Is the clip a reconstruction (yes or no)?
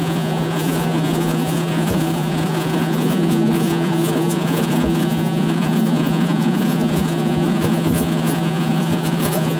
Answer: yes